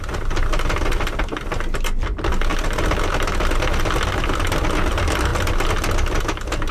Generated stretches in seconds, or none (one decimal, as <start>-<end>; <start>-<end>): 2.5-3.8